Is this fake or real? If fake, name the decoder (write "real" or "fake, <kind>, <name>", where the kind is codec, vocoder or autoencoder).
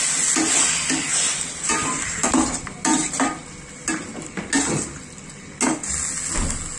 real